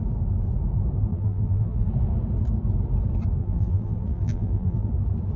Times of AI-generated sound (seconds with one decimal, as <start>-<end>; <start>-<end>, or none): 1.1-1.9; 3.4-4.9